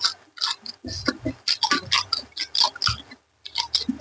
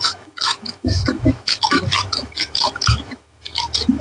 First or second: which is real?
first